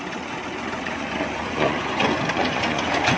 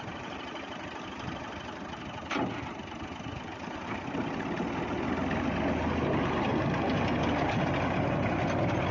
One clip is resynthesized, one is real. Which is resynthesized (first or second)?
first